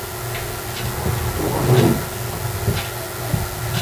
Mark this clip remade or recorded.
recorded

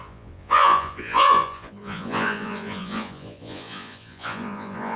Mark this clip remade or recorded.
remade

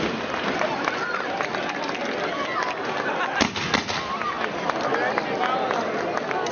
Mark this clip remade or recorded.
recorded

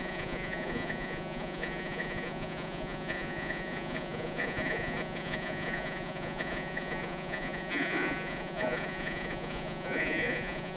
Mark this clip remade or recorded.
remade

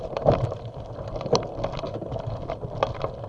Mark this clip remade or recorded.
recorded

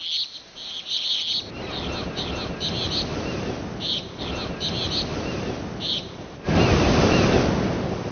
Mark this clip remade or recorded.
recorded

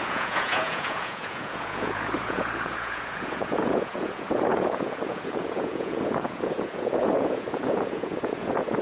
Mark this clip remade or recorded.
remade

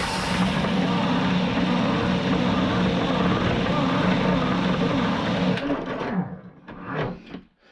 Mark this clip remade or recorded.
recorded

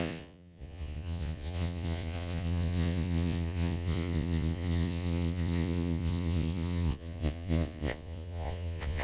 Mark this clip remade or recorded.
remade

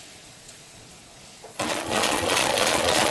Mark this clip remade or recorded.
remade